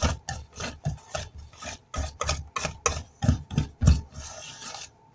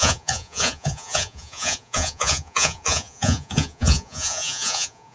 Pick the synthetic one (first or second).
second